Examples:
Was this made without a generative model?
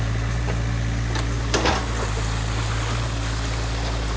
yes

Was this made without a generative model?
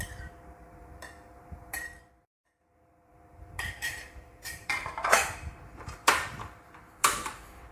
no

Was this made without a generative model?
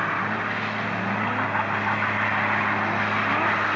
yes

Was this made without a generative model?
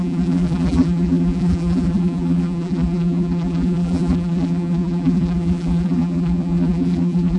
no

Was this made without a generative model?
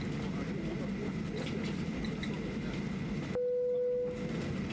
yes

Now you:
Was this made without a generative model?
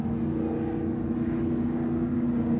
yes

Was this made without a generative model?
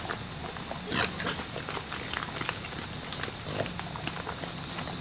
yes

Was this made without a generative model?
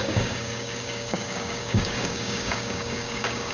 no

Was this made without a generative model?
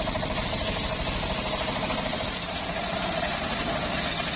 yes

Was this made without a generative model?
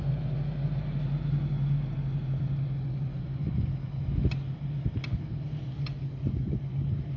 yes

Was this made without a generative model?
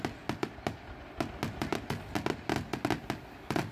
yes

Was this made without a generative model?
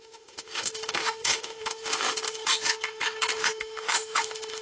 no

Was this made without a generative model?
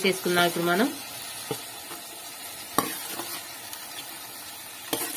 yes